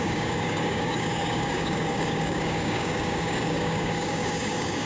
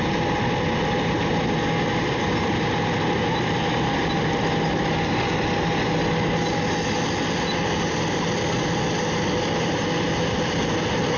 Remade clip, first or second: first